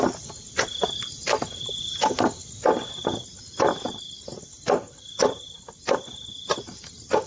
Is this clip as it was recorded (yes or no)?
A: yes